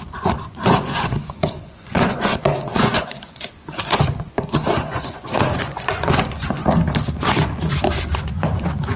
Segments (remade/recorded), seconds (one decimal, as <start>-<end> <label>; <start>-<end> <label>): 0.0-6.6 remade; 6.6-7.1 recorded; 7.1-9.0 remade